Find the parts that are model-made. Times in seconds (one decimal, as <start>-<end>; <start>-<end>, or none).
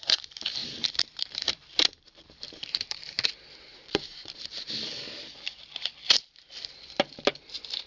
0.6-3.3; 3.7-4.7